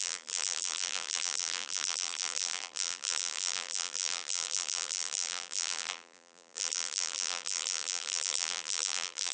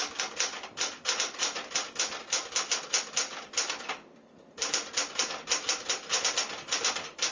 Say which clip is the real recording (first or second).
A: second